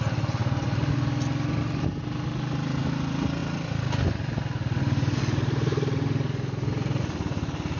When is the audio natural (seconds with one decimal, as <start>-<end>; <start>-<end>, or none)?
0.0-7.8